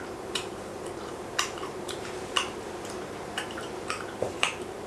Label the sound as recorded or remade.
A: remade